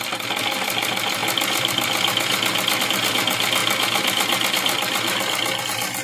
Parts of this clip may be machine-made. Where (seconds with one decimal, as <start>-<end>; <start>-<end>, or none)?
none